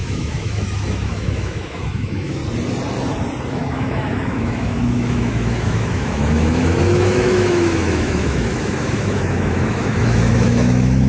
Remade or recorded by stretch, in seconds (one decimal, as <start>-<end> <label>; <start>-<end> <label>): 0.0-2.4 remade; 2.4-3.5 recorded; 3.5-11.1 remade